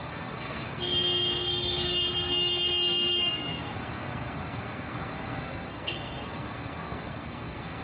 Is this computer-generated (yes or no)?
yes